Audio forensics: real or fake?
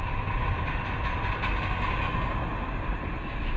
real